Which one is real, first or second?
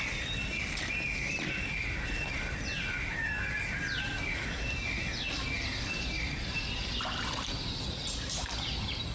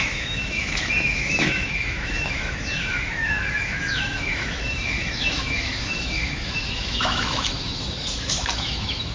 first